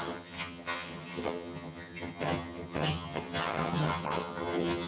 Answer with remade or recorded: remade